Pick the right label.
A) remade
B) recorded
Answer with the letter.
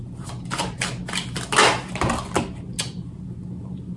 B